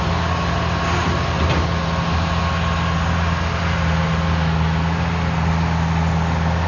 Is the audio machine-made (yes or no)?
no